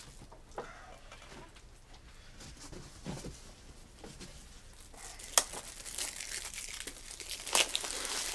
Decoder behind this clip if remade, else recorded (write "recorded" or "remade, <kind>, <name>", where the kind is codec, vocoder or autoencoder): recorded